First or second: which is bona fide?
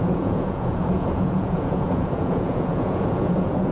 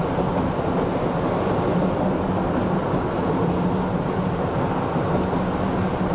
second